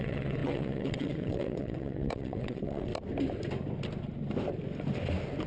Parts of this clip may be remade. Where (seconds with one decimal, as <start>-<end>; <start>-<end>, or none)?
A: 0.0-2.9